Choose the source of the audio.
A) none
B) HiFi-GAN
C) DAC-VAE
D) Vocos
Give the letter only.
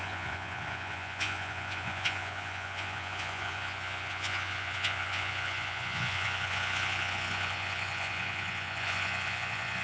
D